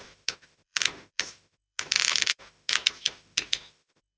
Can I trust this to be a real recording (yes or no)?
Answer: no